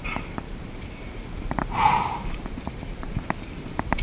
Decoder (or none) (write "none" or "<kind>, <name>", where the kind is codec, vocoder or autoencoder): vocoder, BigVGAN v2